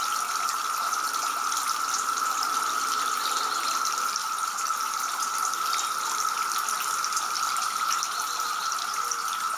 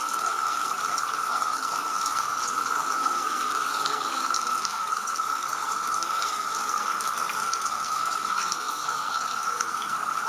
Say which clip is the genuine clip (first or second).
first